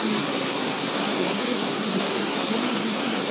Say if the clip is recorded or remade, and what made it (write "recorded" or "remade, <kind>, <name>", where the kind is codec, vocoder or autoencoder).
remade, codec, SNAC